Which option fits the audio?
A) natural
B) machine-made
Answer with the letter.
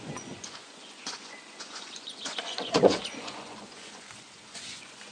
B